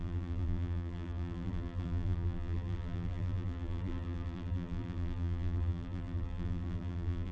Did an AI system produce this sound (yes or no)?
yes